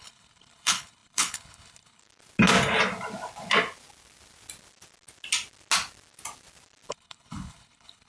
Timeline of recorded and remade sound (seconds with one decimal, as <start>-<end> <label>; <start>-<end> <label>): 0.0-2.0 remade; 2.0-6.9 recorded; 6.9-8.1 remade